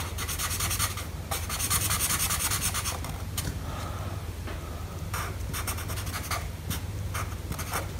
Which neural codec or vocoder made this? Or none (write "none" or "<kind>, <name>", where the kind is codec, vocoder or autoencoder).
none